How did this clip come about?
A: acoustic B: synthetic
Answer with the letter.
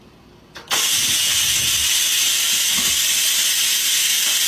A